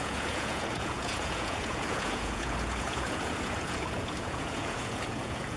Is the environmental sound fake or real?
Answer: fake